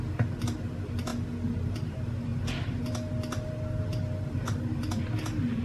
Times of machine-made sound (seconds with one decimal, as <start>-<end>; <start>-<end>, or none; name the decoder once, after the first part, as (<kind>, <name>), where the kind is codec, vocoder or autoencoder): none